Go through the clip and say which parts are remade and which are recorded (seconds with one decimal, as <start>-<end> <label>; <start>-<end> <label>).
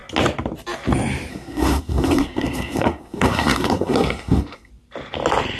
0.0-1.3 recorded; 1.3-4.7 remade; 4.7-5.6 recorded